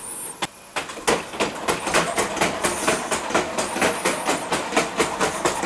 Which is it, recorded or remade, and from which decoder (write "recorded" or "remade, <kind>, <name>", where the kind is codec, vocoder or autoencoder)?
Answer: recorded